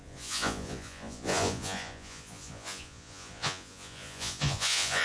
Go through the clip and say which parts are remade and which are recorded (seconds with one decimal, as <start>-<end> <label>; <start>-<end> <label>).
0.0-5.0 remade

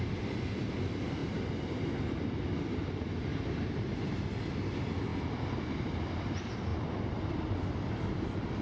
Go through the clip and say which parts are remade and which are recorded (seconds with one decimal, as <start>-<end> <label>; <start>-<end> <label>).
0.0-1.2 recorded; 1.2-1.9 remade; 1.9-3.3 recorded; 3.3-4.3 remade; 4.3-8.6 recorded